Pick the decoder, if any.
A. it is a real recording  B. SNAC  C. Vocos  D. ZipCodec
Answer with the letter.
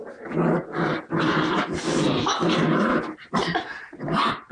A